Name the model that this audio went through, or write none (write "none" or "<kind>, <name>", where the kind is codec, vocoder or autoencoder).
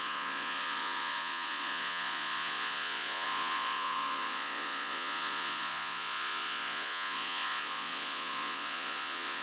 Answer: vocoder, Vocos